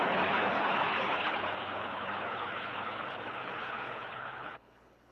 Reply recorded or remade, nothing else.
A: remade